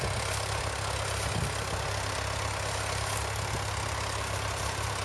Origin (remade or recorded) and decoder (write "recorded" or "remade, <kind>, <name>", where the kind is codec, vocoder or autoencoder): recorded